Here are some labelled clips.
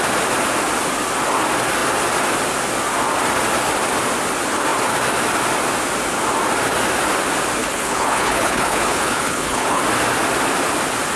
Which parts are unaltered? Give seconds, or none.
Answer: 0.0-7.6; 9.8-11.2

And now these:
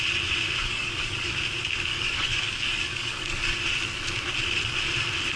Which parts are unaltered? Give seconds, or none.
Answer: 0.0-0.7; 1.3-1.9; 3.4-5.4

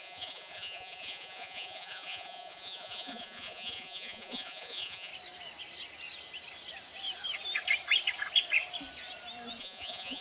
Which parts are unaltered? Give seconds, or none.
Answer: 5.1-9.6

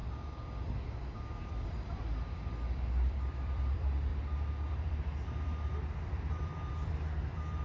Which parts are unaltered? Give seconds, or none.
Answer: 0.0-1.5; 4.1-4.7